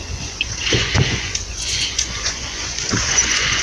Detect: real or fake fake